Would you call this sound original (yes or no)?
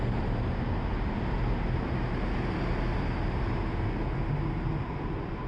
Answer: yes